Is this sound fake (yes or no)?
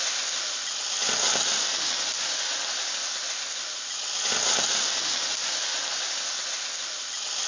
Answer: no